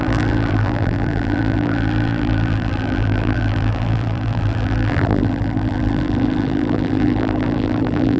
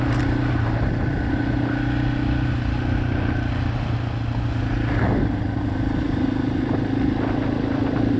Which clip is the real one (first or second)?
second